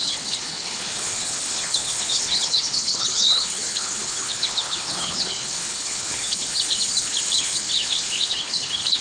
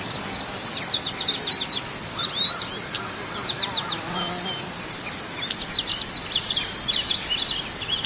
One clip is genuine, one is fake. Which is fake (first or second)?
first